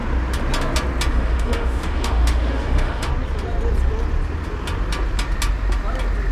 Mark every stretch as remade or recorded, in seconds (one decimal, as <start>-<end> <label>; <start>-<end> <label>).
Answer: 0.0-1.1 recorded; 1.1-3.1 remade; 3.1-6.3 recorded